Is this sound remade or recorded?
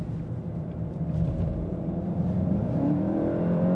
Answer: remade